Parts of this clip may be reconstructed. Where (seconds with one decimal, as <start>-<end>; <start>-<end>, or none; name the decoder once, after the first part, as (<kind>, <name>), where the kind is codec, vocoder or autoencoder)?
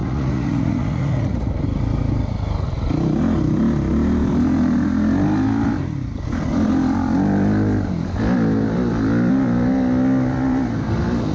0.0-1.5 (vocoder, Vocos)